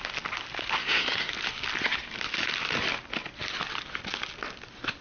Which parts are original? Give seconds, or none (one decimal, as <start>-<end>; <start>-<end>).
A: 0.0-0.8; 1.3-5.0